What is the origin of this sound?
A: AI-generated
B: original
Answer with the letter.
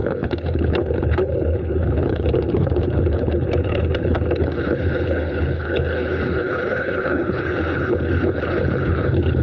A